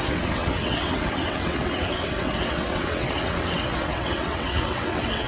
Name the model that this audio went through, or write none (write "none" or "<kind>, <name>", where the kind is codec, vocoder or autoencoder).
vocoder, WaveNeXt